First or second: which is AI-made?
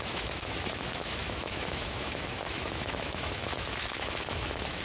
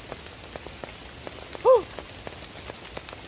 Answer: first